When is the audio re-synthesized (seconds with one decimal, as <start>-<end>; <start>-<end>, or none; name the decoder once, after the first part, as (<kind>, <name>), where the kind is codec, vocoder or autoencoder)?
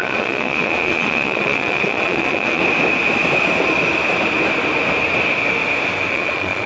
0.0-2.6 (vocoder, Vocos); 6.1-6.7